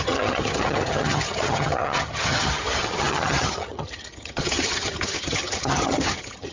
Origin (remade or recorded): remade